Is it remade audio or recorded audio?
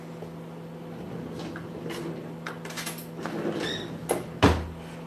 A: recorded